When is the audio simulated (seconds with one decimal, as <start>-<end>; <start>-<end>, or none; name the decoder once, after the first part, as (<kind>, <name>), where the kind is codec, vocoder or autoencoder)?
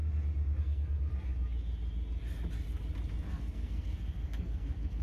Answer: 0.6-1.1 (codec, SNAC); 3.3-5.0